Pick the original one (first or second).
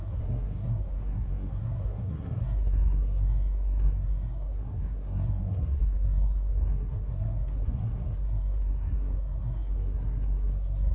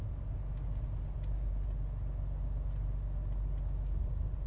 second